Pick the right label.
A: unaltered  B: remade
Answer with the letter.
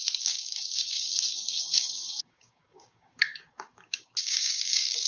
B